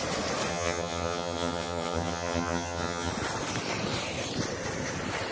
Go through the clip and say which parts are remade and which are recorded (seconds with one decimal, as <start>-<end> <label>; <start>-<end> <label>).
0.0-0.5 recorded; 0.5-3.1 remade; 3.1-5.3 recorded